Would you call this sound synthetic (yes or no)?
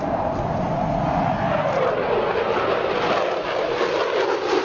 no